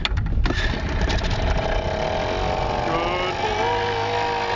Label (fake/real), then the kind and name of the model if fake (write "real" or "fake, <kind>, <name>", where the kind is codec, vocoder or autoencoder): real